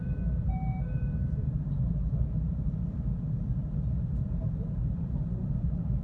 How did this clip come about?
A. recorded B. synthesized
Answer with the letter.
B